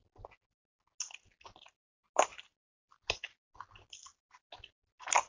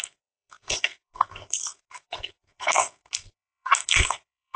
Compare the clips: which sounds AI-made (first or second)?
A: second